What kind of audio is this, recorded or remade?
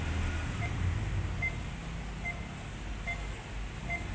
recorded